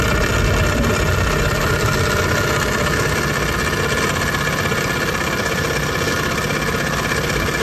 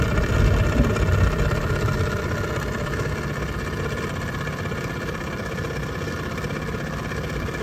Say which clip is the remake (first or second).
second